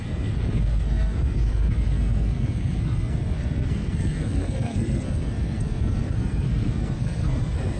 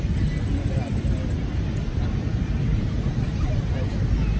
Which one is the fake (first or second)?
first